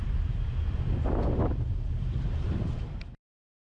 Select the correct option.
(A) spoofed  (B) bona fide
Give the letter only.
B